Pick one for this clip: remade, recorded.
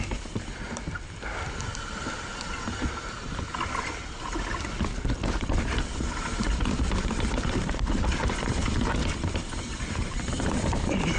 recorded